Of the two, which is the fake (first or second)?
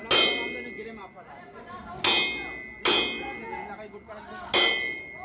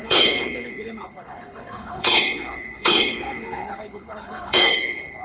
second